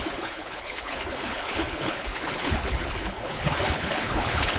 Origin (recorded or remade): remade